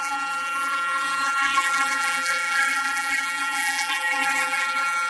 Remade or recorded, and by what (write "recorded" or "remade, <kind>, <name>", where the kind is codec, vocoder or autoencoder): remade, vocoder, BigVGAN v2